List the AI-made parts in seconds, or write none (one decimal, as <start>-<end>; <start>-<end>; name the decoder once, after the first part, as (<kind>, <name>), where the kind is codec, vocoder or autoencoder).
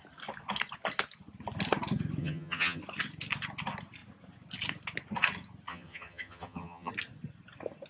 2.2-2.8 (vocoder, HiFi-GAN); 5.7-6.9